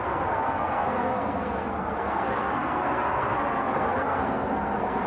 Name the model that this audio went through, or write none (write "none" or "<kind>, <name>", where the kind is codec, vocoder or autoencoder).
codec, SNAC